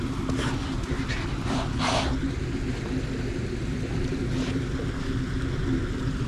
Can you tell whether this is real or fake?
real